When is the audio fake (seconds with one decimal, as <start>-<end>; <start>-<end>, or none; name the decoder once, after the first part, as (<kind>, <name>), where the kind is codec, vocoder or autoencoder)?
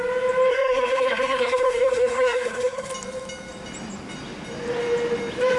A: 0.5-2.9 (codec, SNAC)